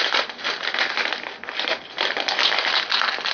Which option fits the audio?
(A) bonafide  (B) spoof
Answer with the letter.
A